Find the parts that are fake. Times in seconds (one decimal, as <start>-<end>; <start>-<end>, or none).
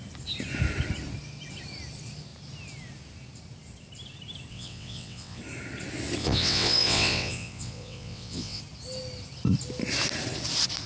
4.5-5.4; 6.2-8.6